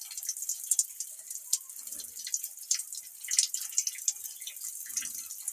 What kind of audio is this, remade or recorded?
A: recorded